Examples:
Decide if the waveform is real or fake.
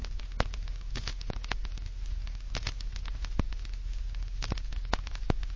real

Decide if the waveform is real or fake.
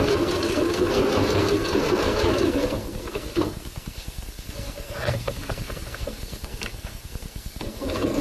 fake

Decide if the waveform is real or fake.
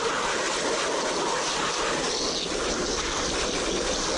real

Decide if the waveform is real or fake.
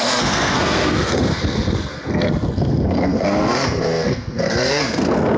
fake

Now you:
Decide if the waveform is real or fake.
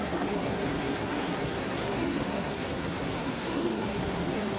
fake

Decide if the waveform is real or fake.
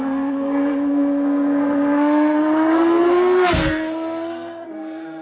fake